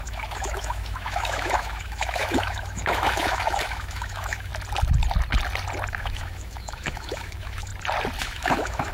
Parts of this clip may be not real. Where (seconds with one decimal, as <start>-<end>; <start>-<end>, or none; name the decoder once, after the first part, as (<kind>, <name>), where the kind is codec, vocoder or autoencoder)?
0.0-4.5 (autoencoder, DAC-VAE); 5.9-7.7; 8.2-8.9

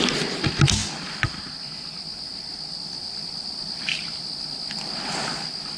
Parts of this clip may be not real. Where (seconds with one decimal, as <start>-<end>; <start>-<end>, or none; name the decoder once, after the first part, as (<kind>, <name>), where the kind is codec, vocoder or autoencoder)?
none

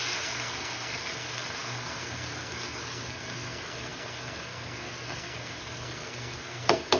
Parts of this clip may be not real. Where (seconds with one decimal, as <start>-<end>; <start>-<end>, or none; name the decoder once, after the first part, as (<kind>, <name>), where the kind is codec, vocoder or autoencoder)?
0.0-7.0 (codec, SNAC)

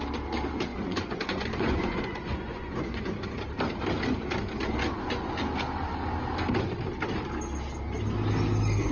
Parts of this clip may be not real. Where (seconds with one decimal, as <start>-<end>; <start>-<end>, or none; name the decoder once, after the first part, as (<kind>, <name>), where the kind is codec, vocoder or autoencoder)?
0.7-3.1 (vocoder, Vocos)